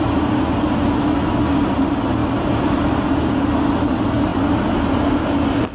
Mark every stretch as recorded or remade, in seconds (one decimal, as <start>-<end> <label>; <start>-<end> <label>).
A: 0.0-2.2 recorded; 2.2-3.2 remade; 3.2-5.7 recorded